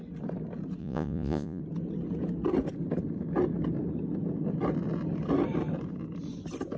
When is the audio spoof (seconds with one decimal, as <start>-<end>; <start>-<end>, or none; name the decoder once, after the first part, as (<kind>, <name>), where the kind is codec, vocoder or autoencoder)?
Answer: 0.8-1.6 (vocoder, Vocos)